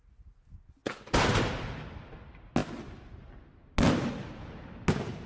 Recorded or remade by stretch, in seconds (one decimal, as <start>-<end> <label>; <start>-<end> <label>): 0.0-5.3 recorded